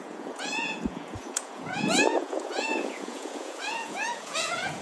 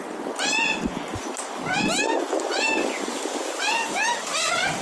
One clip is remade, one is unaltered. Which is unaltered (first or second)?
second